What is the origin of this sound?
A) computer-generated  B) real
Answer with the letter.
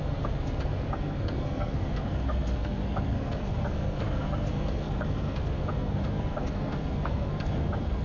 A